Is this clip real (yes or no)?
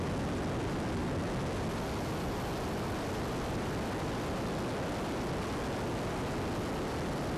yes